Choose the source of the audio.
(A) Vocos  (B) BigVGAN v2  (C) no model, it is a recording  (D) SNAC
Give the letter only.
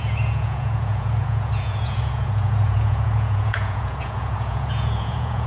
A